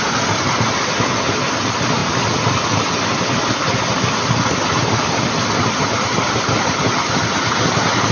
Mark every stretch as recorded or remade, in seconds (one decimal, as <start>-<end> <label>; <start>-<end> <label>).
0.0-8.1 recorded